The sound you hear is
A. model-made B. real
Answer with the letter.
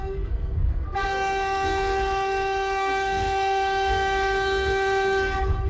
A